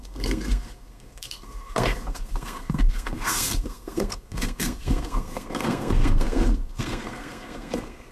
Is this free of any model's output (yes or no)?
no